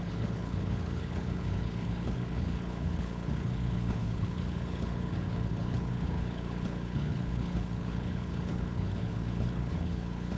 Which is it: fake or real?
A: fake